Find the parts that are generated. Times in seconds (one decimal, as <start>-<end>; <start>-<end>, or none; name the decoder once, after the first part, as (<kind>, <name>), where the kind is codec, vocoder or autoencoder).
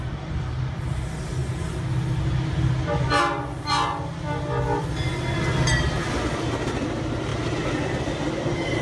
none